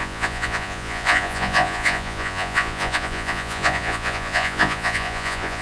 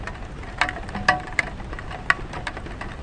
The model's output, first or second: first